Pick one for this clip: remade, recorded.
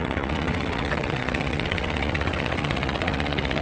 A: remade